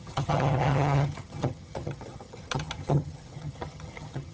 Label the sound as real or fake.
fake